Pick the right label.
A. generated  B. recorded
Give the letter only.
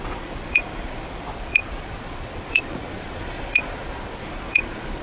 A